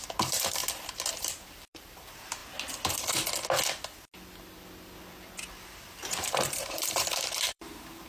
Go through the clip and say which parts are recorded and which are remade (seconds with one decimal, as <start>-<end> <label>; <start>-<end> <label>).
0.0-0.6 remade; 0.6-1.1 recorded; 1.1-2.4 remade; 2.4-6.1 recorded; 6.1-8.1 remade